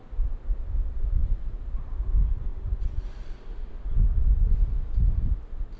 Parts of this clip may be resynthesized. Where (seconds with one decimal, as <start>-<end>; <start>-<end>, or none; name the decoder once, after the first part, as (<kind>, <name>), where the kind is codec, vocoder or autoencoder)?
none